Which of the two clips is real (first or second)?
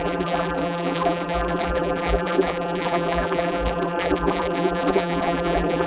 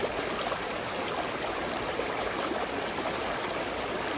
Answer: second